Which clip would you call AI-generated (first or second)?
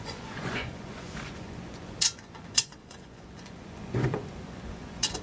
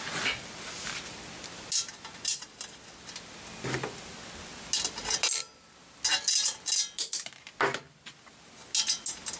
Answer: first